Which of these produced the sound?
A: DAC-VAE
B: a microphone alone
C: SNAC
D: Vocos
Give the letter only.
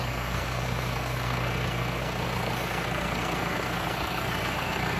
C